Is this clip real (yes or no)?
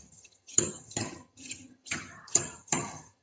no